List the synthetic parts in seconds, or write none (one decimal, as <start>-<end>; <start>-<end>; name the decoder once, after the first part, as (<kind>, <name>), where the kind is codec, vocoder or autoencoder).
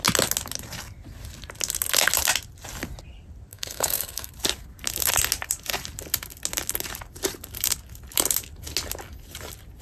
3.5-4.3 (codec, SNAC)